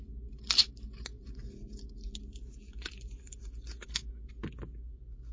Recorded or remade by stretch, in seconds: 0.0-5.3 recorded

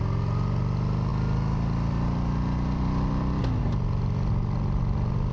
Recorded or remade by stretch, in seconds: 0.0-5.3 recorded

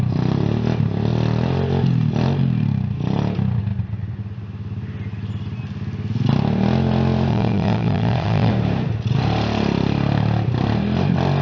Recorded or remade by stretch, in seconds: 0.0-7.3 recorded; 7.3-8.5 remade; 8.5-11.4 recorded

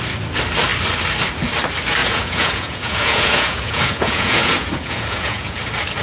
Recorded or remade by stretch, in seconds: 0.0-2.0 recorded; 2.0-5.6 remade; 5.6-6.0 recorded

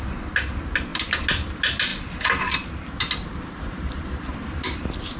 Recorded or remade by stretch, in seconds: 0.0-5.2 recorded

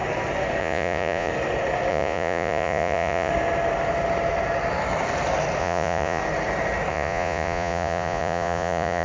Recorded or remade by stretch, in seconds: 0.0-0.6 recorded; 0.6-1.3 remade; 1.3-1.9 recorded; 1.9-3.3 remade; 3.3-5.6 recorded; 5.6-6.2 remade; 6.2-6.9 recorded; 6.9-9.0 remade

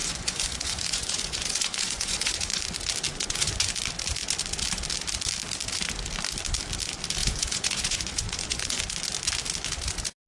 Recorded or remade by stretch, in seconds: 0.0-2.6 remade; 2.6-3.1 recorded; 3.1-3.7 remade; 3.7-7.2 recorded; 7.2-8.8 remade; 8.8-10.3 recorded